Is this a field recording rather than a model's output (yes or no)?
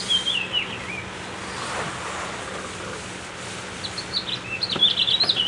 yes